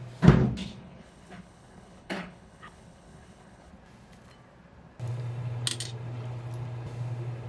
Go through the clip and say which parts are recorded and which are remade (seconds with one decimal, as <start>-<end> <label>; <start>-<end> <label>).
0.0-0.6 recorded; 0.6-3.7 remade; 3.7-7.5 recorded